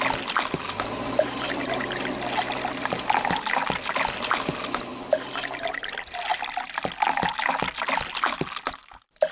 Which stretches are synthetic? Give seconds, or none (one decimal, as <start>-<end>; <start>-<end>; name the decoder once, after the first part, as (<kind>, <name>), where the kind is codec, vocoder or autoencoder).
none